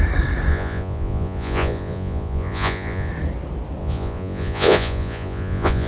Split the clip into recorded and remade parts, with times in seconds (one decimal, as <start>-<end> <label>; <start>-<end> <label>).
0.0-0.5 recorded; 0.5-3.1 remade; 3.1-3.8 recorded; 3.8-5.9 remade